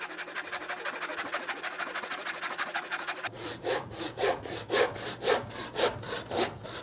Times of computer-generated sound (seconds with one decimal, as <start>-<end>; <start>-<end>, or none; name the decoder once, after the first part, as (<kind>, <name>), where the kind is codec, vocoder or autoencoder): 1.1-4.5 (vocoder, Vocos)

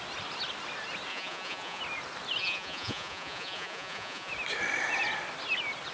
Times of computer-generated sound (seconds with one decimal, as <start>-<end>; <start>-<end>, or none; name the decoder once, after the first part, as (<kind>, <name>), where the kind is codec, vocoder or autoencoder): 1.1-1.8 (vocoder, Vocos); 2.4-4.3